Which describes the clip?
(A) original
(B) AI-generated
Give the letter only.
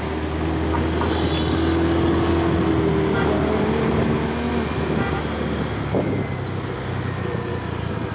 A